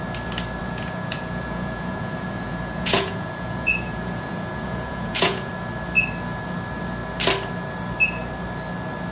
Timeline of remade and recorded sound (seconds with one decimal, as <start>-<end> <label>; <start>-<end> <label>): 0.0-0.6 recorded; 0.6-5.5 remade; 5.5-9.1 recorded